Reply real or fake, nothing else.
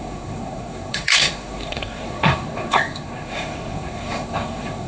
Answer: fake